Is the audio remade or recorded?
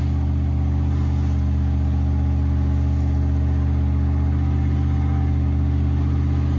recorded